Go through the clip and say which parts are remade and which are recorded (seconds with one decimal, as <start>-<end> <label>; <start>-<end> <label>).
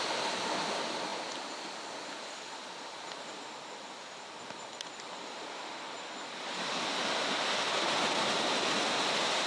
0.0-9.5 recorded